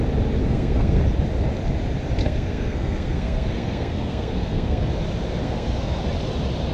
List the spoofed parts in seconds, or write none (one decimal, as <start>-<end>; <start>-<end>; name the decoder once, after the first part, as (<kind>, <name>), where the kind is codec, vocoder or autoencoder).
0.4-1.0 (codec, SNAC); 2.2-4.9; 5.4-6.0